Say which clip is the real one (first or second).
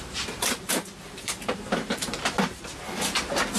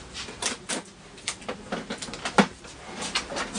second